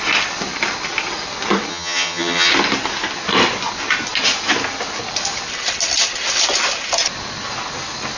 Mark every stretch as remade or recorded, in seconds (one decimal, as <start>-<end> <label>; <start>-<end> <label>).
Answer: 0.0-1.7 recorded; 1.7-2.5 remade; 2.5-8.2 recorded